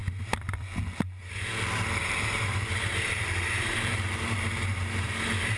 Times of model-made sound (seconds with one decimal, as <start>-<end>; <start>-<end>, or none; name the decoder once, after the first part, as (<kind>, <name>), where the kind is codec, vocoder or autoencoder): 2.0-5.6 (vocoder, BigVGAN v2)